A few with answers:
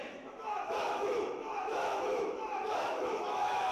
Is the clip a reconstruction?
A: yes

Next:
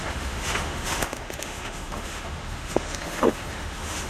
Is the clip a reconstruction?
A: yes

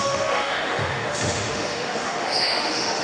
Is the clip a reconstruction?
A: yes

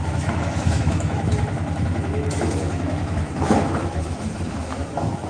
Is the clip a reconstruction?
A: yes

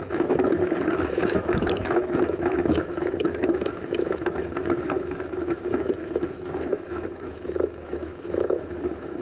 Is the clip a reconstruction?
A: yes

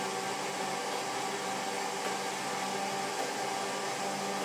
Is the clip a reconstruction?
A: no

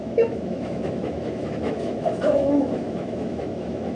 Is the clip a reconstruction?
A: yes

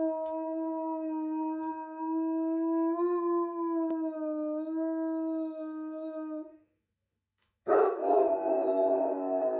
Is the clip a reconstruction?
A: yes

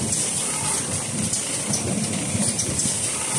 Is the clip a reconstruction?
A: no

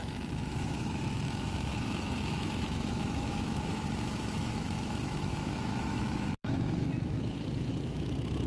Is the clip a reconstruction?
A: yes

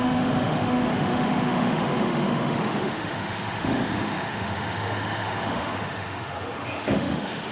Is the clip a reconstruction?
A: yes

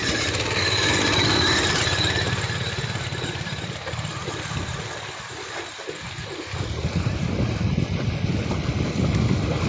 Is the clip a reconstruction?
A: no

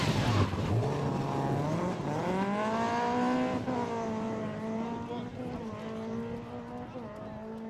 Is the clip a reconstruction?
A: no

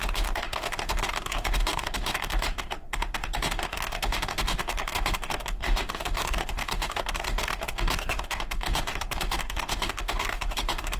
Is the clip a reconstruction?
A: yes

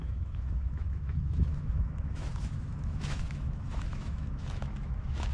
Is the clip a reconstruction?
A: yes